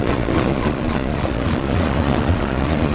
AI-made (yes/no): yes